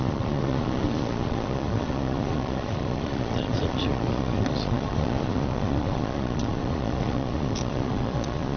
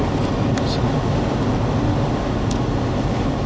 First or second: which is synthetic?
first